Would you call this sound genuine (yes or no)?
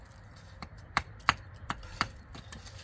no